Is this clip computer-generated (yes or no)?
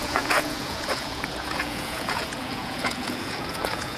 yes